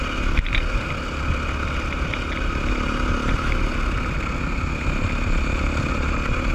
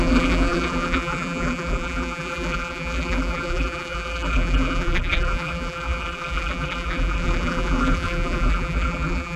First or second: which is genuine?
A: first